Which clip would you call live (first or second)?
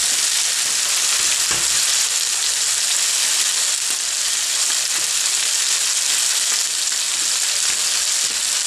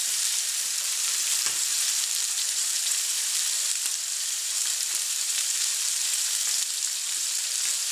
first